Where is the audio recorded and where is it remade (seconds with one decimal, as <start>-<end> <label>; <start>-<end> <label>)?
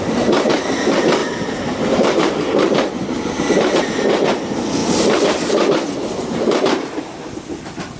0.0-1.2 recorded; 1.2-3.8 remade; 3.8-4.8 recorded; 4.8-5.5 remade; 5.5-8.0 recorded